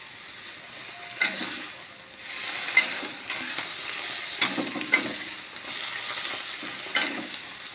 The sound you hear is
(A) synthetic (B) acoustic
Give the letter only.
B